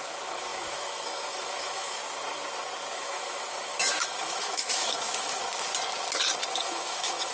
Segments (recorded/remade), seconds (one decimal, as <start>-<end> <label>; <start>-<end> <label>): 0.0-2.0 remade; 2.0-2.9 recorded; 2.9-5.4 remade; 5.4-6.5 recorded; 6.5-7.3 remade